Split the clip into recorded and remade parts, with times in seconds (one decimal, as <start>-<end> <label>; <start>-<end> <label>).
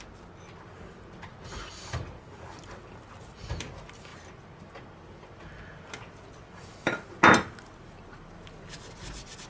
0.0-9.5 recorded